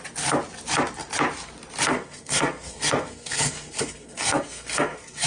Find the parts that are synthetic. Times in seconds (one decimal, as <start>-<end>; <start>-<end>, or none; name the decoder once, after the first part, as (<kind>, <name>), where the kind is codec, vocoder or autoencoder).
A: 1.9-5.3 (codec, SNAC)